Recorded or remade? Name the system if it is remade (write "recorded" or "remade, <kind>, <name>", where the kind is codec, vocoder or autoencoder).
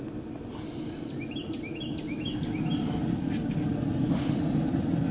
recorded